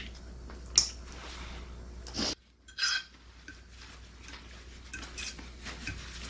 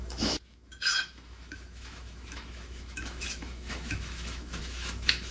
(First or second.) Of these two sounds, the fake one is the second